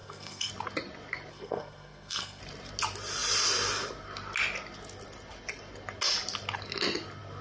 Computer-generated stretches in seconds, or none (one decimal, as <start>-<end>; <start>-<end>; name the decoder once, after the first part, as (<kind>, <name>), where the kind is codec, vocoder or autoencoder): 0.0-0.5 (codec, SNAC); 1.3-2.4